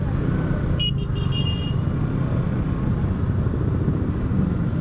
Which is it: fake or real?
real